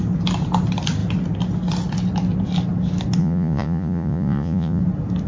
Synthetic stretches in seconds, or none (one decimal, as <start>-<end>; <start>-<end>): 3.2-4.8